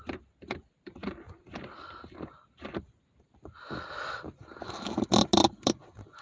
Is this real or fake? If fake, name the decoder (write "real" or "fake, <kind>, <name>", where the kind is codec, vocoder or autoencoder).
real